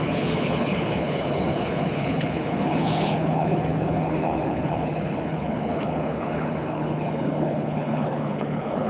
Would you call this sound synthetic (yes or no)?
yes